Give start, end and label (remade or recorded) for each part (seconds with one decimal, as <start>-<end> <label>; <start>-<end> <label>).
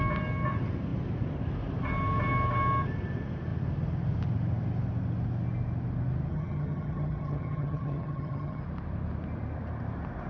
0.0-6.3 recorded; 6.3-8.6 remade; 8.6-10.3 recorded